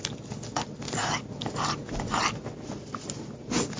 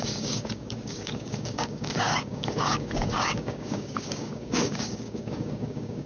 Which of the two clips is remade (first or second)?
second